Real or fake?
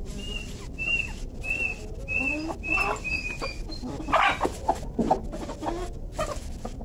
real